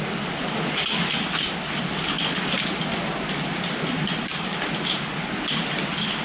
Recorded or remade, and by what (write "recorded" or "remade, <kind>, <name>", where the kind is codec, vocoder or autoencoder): recorded